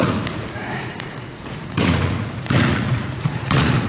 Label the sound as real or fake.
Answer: fake